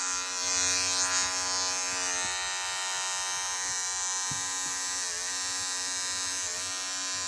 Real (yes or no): yes